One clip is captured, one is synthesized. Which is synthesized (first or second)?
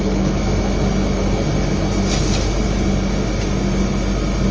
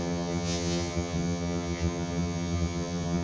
second